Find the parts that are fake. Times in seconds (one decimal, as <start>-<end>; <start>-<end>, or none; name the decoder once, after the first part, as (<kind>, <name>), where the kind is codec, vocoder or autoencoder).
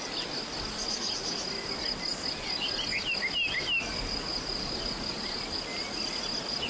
none